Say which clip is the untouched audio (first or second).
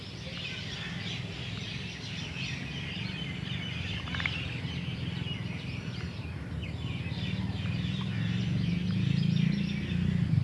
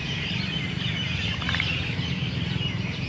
first